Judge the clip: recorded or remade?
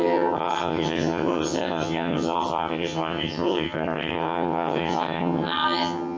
remade